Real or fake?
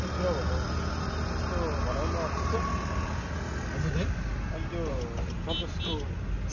real